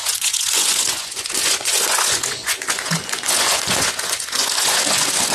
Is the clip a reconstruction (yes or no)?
yes